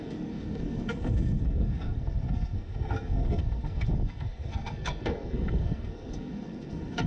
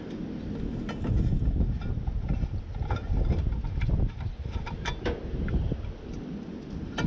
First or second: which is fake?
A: first